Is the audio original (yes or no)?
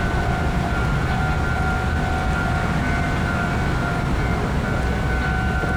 yes